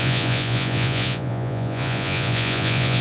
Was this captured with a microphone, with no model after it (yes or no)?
no